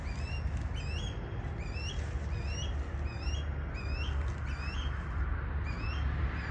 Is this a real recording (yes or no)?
yes